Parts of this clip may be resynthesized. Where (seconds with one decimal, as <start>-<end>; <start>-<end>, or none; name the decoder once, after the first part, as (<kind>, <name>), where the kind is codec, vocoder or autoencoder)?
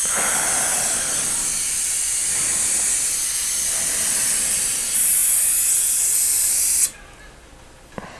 none